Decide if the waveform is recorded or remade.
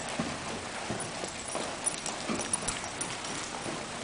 recorded